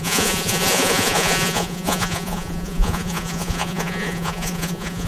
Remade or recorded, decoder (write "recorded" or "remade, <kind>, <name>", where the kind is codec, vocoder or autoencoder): remade, vocoder, Vocos